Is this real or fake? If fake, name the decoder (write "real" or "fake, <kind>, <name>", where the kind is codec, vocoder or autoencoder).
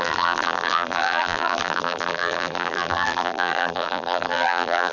fake, vocoder, BigVGAN v2